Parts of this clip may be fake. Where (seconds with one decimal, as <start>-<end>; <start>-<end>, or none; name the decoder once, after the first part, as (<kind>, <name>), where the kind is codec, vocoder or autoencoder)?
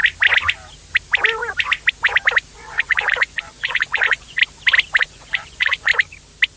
2.6-4.4 (vocoder, Vocos); 5.0-5.9